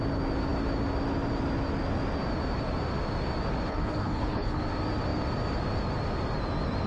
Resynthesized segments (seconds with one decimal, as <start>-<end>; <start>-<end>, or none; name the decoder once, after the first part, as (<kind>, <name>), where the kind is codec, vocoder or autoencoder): 3.7-4.6 (codec, HILCodec)